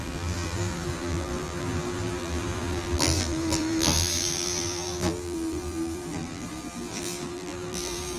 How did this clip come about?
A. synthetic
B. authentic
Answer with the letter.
A